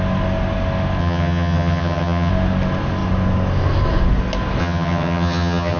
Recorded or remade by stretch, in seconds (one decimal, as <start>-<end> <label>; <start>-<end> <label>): 0.0-1.0 recorded; 1.0-2.3 remade; 2.3-4.6 recorded; 4.6-5.8 remade